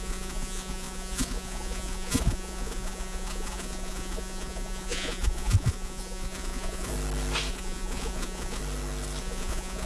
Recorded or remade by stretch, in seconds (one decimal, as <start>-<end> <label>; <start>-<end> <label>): 0.0-6.9 remade; 6.9-7.5 recorded; 7.5-8.6 remade; 8.6-9.2 recorded; 9.2-9.9 remade